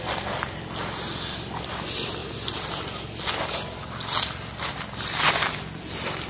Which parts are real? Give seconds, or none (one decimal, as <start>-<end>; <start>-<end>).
0.0-6.3